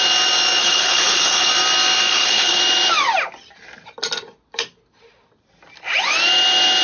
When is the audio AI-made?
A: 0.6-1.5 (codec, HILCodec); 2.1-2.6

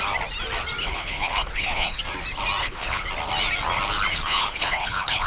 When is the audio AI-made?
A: 0.8-2.0 (codec, HILCodec); 2.6-3.1; 4.1-5.3

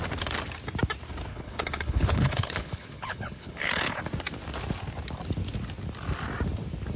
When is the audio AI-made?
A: 1.3-4.0 (codec, HILCodec)

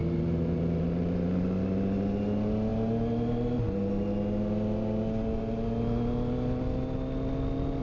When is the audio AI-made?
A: none

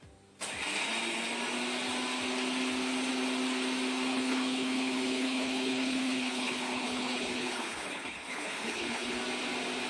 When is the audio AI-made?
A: 4.1-9.2 (codec, HILCodec)

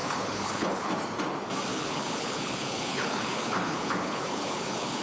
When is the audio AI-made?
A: 0.0-0.9 (codec, HILCodec); 1.7-5.0